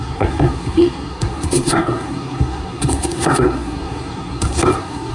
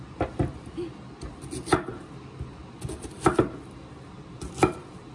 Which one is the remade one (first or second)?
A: first